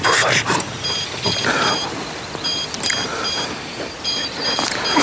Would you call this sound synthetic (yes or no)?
yes